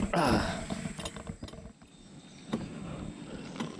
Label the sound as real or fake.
real